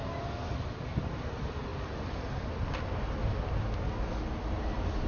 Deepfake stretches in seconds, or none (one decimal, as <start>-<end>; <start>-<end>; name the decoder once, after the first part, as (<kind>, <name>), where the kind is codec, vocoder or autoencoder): none